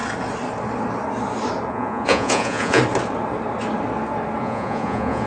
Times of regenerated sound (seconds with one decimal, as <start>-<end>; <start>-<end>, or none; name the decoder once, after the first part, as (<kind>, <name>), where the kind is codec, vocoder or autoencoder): 1.7-2.8 (vocoder, Vocos); 4.4-5.3